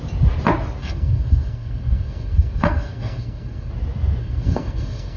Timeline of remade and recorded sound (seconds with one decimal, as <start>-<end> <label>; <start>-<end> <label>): 0.0-0.8 recorded; 0.8-3.7 remade; 3.7-4.2 recorded; 4.2-5.2 remade